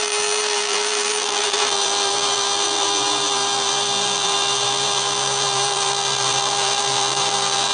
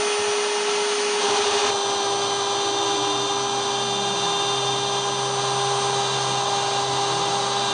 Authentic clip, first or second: second